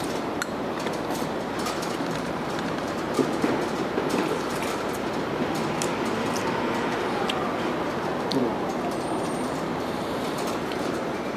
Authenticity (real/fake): fake